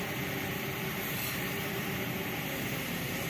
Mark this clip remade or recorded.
remade